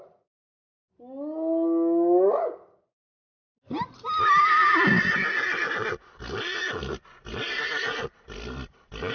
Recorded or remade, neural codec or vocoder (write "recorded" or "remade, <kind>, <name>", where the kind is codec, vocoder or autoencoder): recorded